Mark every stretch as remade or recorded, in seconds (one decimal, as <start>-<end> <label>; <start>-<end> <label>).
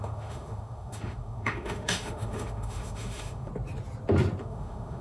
0.0-3.5 remade; 3.5-4.4 recorded; 4.4-5.0 remade